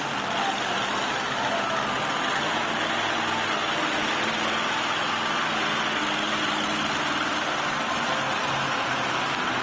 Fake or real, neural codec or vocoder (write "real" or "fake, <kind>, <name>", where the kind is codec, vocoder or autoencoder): real